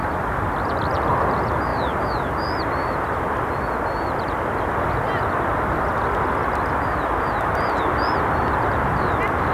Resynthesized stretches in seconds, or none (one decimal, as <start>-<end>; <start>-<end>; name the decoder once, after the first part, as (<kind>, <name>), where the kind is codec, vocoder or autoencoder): none